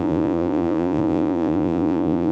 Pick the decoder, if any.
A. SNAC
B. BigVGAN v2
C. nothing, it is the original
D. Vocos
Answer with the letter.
D